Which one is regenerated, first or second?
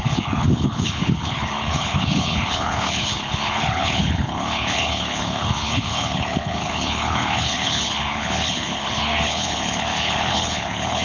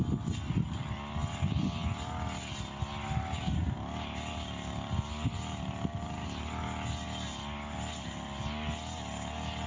first